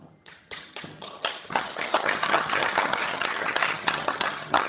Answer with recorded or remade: remade